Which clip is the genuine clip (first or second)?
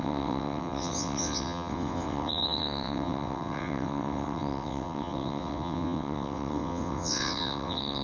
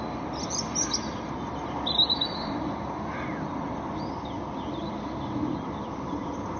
second